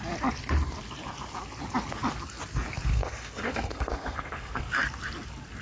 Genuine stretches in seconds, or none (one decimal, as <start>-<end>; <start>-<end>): 0.0-2.9; 4.7-5.6